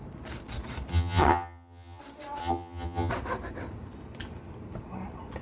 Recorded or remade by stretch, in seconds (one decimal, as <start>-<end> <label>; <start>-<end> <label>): 0.0-0.9 recorded; 0.9-2.0 remade; 2.0-2.4 recorded; 2.4-3.1 remade; 3.1-5.4 recorded